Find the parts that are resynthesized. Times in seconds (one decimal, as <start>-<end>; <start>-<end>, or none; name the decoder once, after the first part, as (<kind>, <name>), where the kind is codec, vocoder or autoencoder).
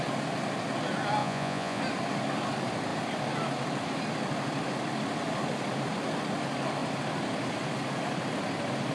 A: 1.2-1.8 (vocoder, Vocos)